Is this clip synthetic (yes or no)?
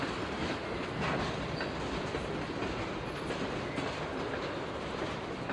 no